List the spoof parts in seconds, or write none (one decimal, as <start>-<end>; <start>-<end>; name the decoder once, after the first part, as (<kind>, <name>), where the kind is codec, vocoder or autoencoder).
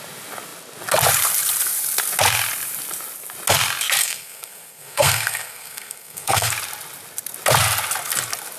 4.0-6.5 (codec, SNAC)